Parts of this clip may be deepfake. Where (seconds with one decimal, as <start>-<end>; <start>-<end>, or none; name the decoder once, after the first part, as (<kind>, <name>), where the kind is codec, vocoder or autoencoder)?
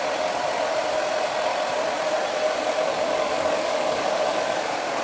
2.9-5.0 (codec, DAC)